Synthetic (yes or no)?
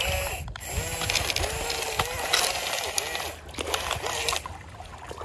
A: no